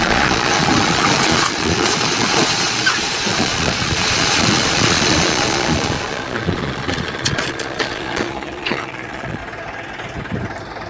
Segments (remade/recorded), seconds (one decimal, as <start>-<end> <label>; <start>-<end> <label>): 0.0-9.4 remade; 9.4-10.9 recorded